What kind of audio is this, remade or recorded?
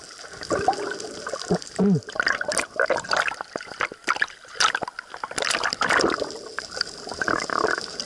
recorded